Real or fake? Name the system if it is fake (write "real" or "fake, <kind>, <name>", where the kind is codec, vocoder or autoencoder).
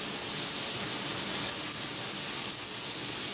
real